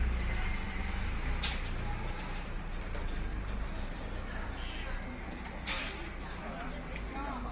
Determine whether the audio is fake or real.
real